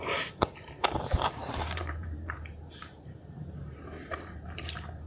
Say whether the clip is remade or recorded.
remade